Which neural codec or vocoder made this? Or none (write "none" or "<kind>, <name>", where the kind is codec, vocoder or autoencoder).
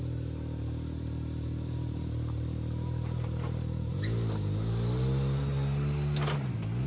none